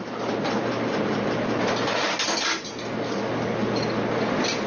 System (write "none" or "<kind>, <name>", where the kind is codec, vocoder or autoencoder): none